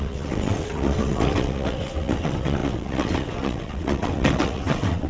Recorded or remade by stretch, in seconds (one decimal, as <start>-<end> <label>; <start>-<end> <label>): 0.0-5.1 remade